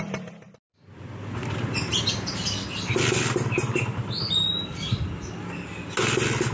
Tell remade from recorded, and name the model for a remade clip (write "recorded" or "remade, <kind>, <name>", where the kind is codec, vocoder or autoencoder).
recorded